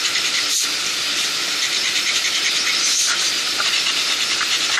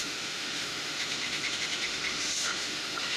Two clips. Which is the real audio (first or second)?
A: first